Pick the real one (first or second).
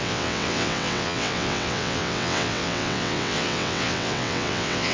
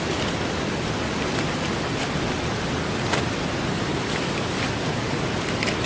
second